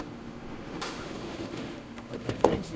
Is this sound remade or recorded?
remade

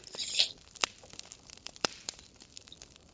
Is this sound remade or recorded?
remade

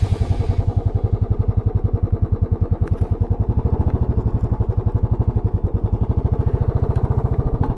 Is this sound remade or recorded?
recorded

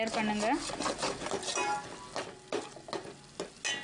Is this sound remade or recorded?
recorded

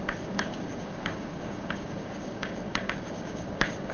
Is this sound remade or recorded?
remade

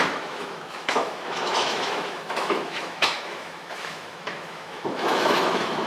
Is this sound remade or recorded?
remade